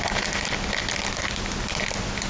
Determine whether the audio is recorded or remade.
recorded